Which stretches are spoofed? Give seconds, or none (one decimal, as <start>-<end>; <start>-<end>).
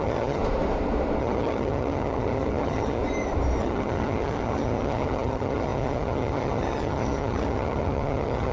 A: 0.0-0.4; 1.2-3.0; 3.6-8.5